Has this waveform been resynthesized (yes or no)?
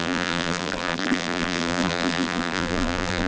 yes